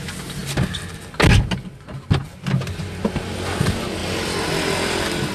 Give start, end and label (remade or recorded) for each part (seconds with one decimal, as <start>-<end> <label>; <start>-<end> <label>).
0.0-5.3 recorded